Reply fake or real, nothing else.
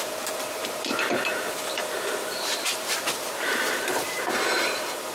fake